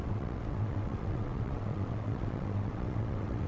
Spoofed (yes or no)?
yes